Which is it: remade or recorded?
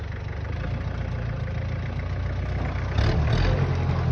recorded